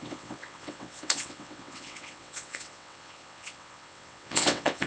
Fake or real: fake